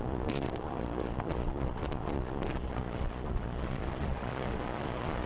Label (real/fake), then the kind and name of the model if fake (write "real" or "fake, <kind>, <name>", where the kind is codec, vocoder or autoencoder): fake, vocoder, Vocos